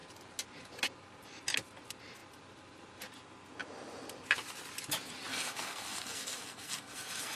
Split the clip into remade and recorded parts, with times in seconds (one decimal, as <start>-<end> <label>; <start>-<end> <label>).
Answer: 0.0-5.3 recorded; 5.3-7.4 remade